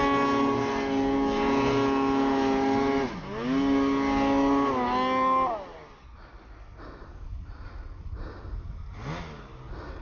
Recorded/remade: recorded